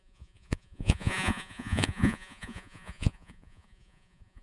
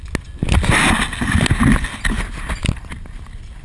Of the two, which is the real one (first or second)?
second